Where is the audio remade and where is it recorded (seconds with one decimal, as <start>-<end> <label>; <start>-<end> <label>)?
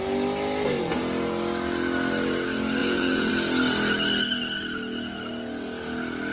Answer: 0.0-2.8 recorded; 2.8-3.3 remade; 3.3-6.3 recorded